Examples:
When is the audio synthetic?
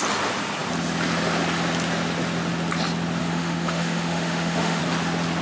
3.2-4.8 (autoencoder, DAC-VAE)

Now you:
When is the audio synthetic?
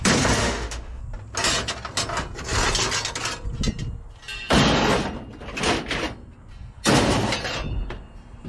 0.4-1.0 (autoencoder, DAC-VAE)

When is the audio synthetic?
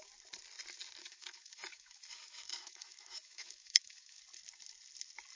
1.0-4.2 (autoencoder, DAC-VAE)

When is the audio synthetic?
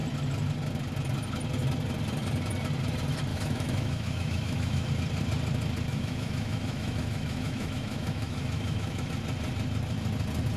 3.3-4.9 (autoencoder, DAC-VAE); 5.9-9.1